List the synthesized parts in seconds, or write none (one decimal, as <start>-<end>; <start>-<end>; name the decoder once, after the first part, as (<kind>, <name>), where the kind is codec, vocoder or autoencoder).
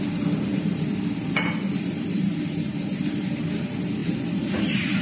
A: 0.5-3.5 (vocoder, BigVGAN v2); 4.0-5.0